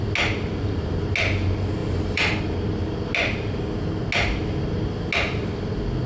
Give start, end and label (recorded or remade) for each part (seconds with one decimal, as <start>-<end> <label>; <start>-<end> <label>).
0.0-1.8 recorded; 1.8-2.4 remade; 2.4-6.1 recorded